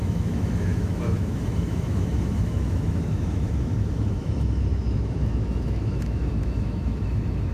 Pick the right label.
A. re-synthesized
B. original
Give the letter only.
A